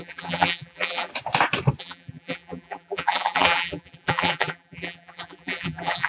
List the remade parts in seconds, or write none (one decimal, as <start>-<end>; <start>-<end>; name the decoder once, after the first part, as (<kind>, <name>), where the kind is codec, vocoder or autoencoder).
0.0-1.1 (vocoder, BigVGAN v2); 1.8-6.1